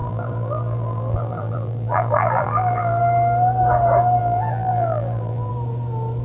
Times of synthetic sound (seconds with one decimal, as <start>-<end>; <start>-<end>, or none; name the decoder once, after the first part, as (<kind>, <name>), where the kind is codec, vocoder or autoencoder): 0.0-3.0 (vocoder, BigVGAN v2); 4.2-5.5